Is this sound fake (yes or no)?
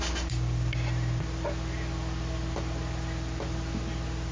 no